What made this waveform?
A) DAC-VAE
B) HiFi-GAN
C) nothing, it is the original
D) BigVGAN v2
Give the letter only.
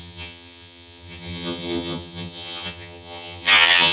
B